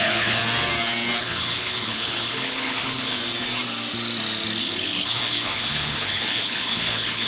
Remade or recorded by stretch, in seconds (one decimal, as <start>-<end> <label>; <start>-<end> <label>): 0.0-0.4 remade; 0.4-1.2 recorded; 1.2-3.2 remade; 3.2-4.6 recorded; 4.6-7.3 remade